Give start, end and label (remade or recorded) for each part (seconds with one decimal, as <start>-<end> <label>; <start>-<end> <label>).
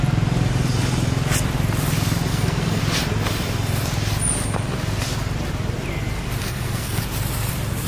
0.0-2.3 recorded; 2.3-2.8 remade; 2.8-6.4 recorded; 6.4-7.0 remade; 7.0-7.9 recorded